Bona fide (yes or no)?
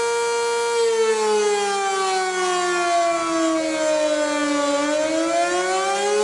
yes